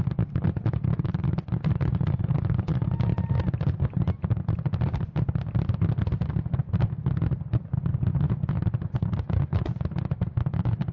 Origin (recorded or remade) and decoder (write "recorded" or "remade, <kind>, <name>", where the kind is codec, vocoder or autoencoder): recorded